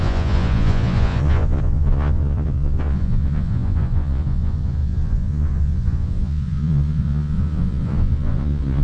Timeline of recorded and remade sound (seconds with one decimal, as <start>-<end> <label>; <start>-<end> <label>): 0.0-8.8 remade